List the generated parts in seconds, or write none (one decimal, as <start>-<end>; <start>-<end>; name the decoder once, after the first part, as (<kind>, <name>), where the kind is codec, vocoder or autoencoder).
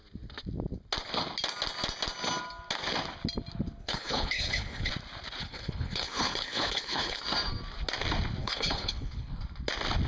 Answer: 3.8-4.9 (codec, HILCodec); 5.4-7.2; 8.4-9.3